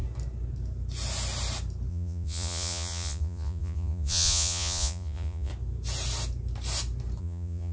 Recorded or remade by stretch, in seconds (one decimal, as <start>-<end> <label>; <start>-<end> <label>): 0.0-1.9 recorded; 1.9-5.5 remade; 5.5-7.2 recorded; 7.2-7.7 remade